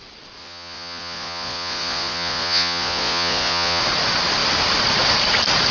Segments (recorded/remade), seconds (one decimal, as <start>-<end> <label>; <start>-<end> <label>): 0.0-0.4 recorded; 0.4-3.8 remade; 3.8-5.7 recorded